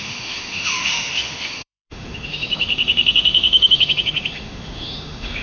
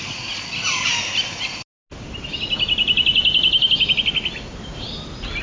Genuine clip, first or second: second